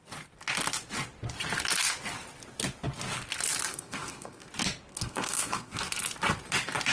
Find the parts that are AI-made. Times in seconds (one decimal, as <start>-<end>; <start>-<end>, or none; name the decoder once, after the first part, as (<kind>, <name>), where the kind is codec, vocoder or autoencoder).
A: 3.7-4.5 (codec, SNAC); 4.9-5.8